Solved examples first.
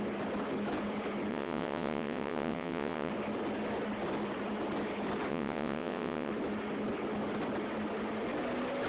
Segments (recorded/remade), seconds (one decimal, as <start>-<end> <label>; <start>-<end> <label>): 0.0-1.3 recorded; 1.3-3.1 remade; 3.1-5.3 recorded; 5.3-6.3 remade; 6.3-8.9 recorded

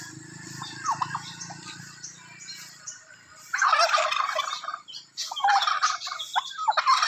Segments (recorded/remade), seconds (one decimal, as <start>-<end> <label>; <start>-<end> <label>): 0.0-7.1 recorded

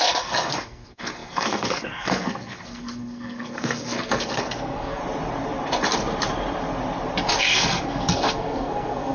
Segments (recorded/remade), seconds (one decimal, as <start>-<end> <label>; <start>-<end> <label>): 0.0-5.0 remade; 5.0-7.4 recorded; 7.4-9.1 remade